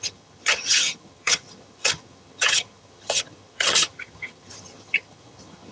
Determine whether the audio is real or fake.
fake